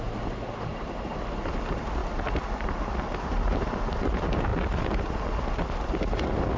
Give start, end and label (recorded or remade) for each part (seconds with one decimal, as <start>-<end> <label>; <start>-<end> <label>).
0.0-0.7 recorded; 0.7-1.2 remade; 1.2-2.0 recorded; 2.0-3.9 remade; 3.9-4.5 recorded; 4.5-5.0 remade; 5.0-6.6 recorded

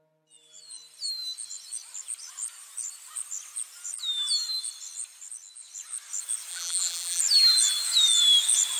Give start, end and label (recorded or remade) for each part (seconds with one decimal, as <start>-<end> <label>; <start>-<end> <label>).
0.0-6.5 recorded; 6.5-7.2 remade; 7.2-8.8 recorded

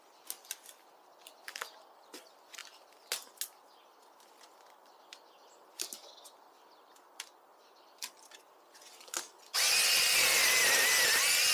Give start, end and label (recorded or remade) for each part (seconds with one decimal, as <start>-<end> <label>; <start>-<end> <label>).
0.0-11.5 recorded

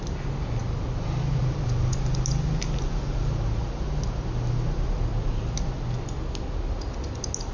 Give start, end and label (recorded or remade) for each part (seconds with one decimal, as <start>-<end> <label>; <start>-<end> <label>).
0.0-7.5 recorded

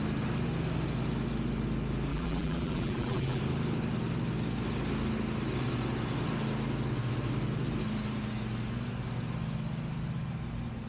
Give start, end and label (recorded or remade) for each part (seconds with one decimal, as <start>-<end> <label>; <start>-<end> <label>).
0.0-2.1 recorded; 2.1-3.4 remade; 3.4-10.9 recorded

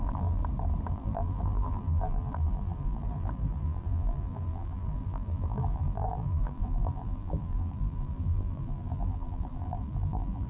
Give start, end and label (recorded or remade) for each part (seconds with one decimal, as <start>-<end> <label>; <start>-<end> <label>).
0.0-0.4 remade; 0.4-0.9 recorded; 0.9-10.5 remade

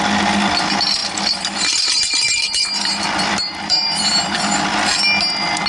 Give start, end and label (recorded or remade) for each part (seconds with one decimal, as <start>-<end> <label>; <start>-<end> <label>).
0.0-1.0 recorded; 1.0-4.4 remade; 4.4-5.7 recorded